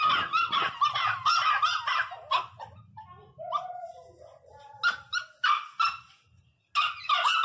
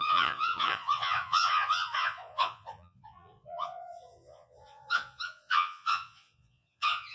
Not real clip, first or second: second